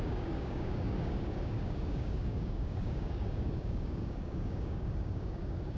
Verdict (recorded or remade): remade